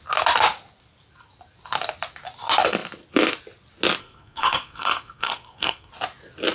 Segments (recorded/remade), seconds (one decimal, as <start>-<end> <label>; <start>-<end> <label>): 0.0-4.0 recorded; 4.0-5.9 remade; 5.9-6.5 recorded

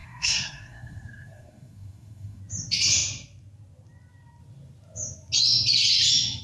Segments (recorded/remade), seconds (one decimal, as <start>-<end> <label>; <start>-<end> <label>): 0.0-2.4 remade; 2.4-6.4 recorded

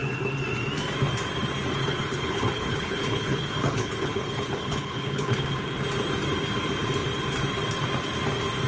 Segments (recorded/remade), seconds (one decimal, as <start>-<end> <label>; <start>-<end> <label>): 0.0-1.8 recorded; 1.8-5.4 remade; 5.4-8.7 recorded

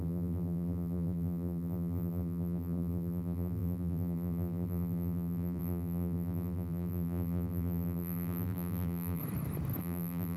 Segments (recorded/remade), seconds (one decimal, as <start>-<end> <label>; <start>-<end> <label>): 0.0-9.2 remade; 9.2-9.8 recorded; 9.8-10.4 remade

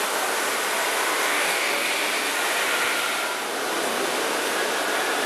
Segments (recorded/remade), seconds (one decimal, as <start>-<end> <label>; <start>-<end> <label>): 0.0-1.2 recorded; 1.2-1.9 remade; 1.9-5.3 recorded